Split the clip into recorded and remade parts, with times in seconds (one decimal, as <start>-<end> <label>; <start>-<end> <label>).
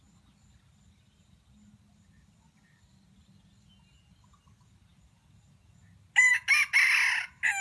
0.0-7.6 recorded